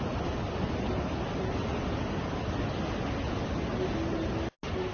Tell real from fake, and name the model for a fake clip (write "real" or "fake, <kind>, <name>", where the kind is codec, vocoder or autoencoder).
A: real